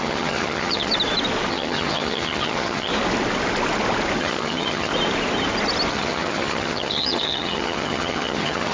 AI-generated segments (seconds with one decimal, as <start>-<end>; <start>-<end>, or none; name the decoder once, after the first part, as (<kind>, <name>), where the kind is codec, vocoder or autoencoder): 0.0-0.9 (vocoder, HiFi-GAN); 1.5-2.9; 4.2-4.9; 5.9-8.7